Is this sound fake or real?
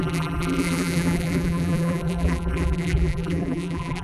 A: fake